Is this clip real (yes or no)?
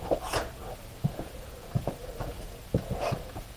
no